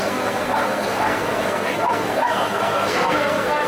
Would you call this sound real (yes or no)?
no